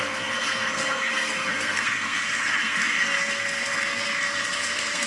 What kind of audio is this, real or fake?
fake